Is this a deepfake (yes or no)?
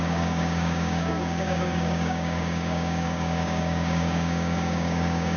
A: yes